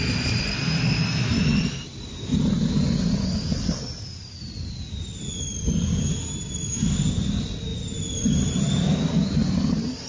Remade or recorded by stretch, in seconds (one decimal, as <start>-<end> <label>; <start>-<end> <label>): 0.0-10.1 recorded